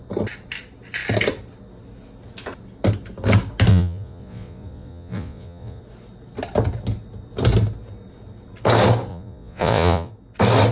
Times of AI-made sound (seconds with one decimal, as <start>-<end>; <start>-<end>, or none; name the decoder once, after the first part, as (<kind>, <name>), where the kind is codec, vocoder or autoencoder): 3.7-5.8 (vocoder, Vocos); 9.1-10.1